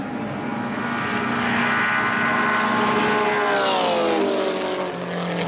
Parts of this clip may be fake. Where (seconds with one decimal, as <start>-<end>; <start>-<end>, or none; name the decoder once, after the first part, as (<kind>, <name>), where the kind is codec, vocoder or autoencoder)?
none